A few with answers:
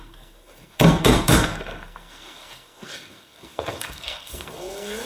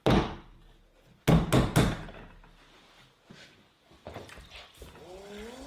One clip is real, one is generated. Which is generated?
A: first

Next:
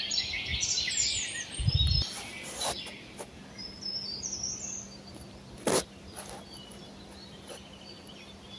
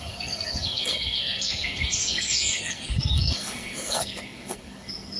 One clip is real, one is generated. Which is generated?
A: second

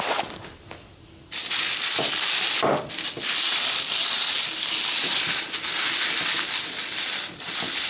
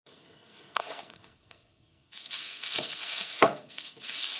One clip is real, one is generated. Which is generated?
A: second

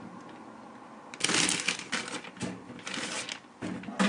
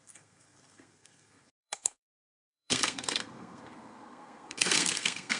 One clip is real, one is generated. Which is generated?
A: second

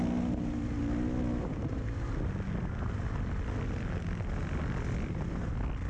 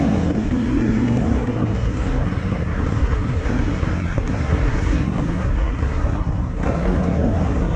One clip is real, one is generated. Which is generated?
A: second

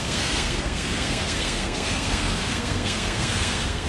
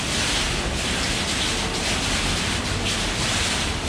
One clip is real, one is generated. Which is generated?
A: first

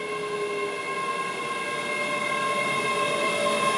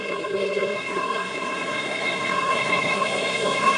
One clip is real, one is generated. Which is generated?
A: second